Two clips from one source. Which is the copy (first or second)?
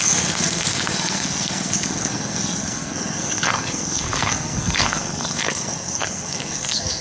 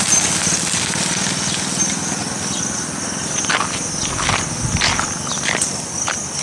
first